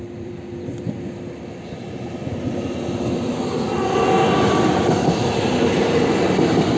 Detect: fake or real fake